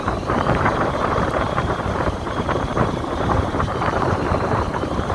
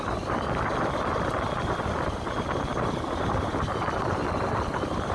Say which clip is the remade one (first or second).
first